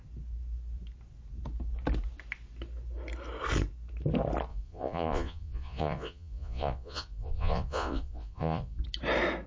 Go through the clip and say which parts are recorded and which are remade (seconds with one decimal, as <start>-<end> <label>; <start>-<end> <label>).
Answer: 0.0-4.5 recorded; 4.5-8.8 remade; 8.8-9.5 recorded